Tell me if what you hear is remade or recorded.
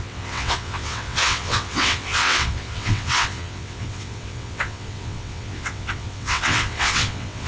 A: remade